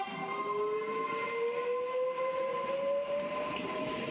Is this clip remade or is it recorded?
recorded